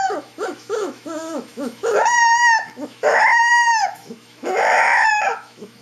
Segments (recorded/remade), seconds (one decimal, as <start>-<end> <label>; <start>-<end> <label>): 0.0-5.8 remade